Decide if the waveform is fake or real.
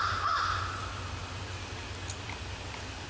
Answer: real